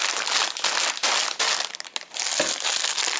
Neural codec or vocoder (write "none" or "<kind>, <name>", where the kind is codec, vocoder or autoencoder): none